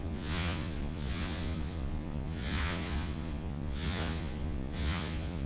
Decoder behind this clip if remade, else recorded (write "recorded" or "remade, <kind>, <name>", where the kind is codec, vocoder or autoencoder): remade, vocoder, Vocos